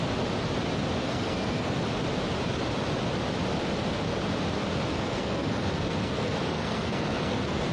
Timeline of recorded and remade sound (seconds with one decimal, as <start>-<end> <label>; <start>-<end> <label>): 0.0-1.0 recorded; 1.0-1.8 remade; 1.8-4.9 recorded; 4.9-7.7 remade